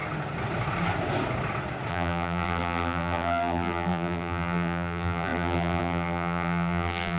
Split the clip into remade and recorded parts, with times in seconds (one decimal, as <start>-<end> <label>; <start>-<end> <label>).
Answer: 0.0-1.9 recorded; 1.9-7.2 remade